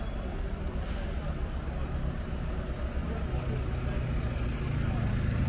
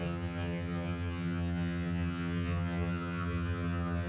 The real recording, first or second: first